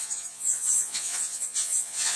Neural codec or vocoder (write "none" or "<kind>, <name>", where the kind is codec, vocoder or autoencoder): vocoder, Vocos